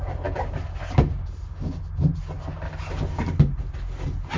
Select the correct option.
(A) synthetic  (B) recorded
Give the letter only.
B